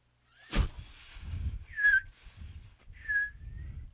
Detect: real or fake real